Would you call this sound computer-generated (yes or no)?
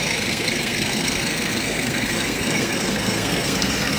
yes